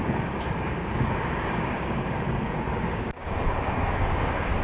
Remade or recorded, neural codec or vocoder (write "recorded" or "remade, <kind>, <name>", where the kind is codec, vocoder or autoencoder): remade, codec, DAC